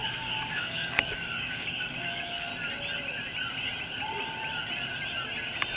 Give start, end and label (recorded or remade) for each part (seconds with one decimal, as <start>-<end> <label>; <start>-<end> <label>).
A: 0.0-2.5 remade; 2.5-5.8 recorded